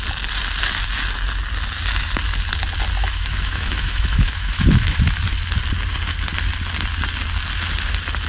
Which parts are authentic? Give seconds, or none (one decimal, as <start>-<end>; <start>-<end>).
0.0-3.0; 5.0-8.3